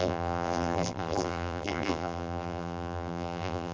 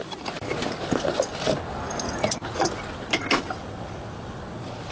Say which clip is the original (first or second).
second